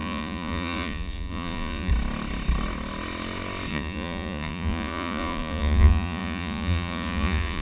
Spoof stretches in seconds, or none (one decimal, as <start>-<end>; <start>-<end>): 0.0-1.9; 3.7-7.6